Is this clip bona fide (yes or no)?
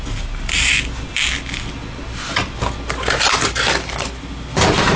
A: yes